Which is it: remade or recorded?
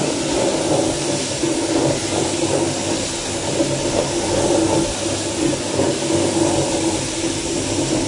recorded